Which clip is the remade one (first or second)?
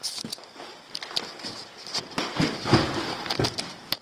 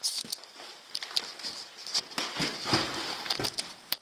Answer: first